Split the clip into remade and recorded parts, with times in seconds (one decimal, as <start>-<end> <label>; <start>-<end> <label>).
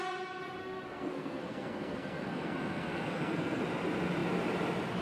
0.0-0.6 recorded; 0.6-3.6 remade; 3.6-5.0 recorded